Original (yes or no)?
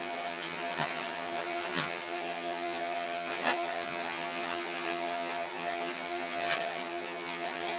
no